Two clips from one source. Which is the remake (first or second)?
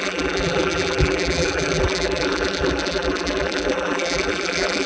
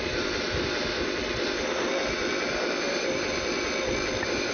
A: first